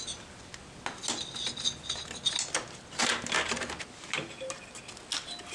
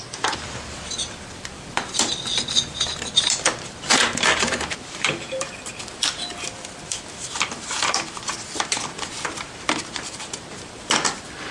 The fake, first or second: second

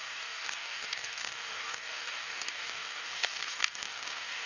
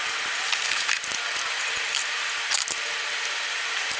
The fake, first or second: first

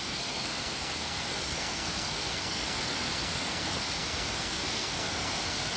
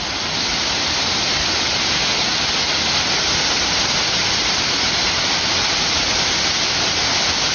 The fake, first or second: first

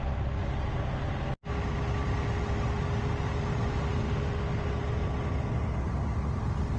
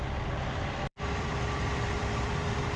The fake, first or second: second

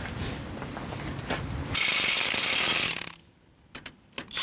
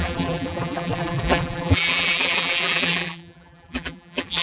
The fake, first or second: second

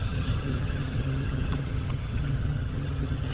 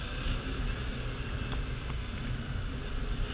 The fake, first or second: first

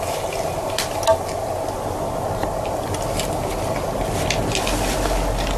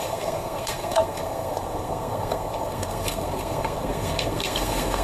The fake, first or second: second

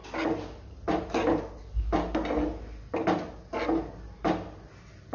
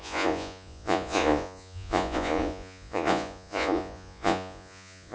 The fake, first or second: second